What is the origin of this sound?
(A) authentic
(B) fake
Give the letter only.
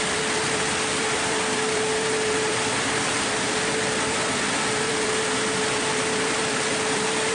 B